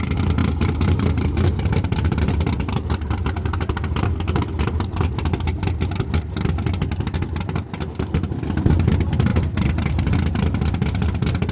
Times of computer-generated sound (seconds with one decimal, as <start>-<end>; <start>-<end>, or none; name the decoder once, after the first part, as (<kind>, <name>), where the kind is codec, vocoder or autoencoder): 0.4-2.2 (vocoder, BigVGAN v2); 9.3-10.0